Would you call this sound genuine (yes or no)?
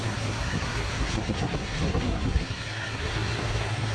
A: no